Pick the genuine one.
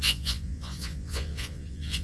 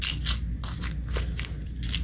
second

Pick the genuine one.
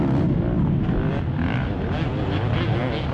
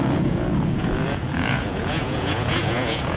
first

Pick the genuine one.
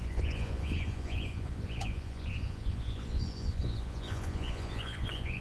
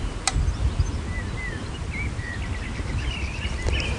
second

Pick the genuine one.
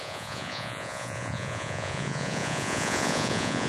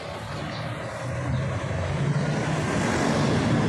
second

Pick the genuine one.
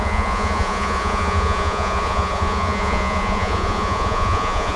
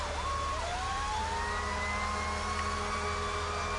second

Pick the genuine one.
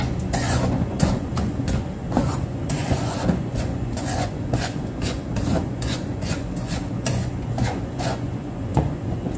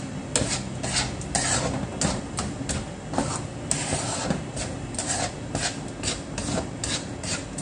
second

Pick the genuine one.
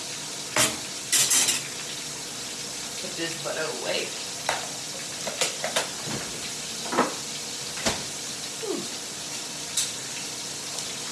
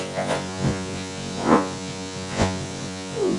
first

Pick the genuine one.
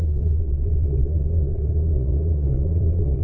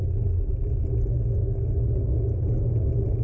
second